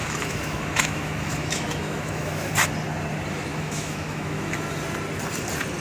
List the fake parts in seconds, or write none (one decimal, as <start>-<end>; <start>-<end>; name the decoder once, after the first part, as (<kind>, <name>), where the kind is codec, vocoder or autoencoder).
0.0-2.5 (autoencoder, DAC-VAE); 3.5-4.5